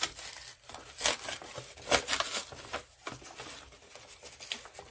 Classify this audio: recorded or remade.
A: recorded